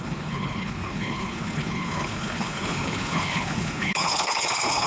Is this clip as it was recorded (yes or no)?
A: no